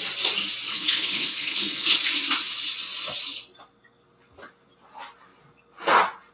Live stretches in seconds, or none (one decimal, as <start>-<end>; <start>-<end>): 0.0-0.7; 2.0-6.3